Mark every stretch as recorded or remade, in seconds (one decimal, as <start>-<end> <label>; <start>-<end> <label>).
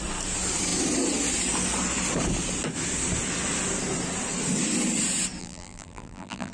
0.0-5.4 recorded; 5.4-6.5 remade